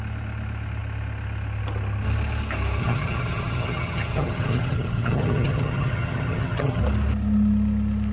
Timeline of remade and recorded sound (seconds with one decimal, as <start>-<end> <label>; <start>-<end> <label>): 0.0-2.8 recorded; 2.8-6.8 remade; 6.8-8.1 recorded